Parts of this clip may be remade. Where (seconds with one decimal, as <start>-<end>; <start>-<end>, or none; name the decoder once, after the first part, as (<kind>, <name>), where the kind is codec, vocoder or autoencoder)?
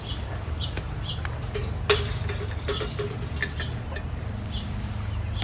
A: none